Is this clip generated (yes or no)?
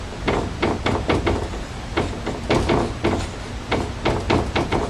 yes